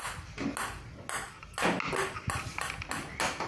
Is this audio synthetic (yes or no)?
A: no